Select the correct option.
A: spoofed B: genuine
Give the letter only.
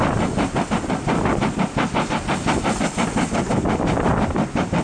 B